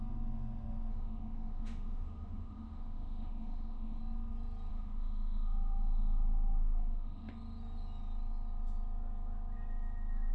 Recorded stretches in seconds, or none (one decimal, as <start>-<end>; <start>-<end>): 0.0-0.9; 4.0-4.7; 7.3-10.3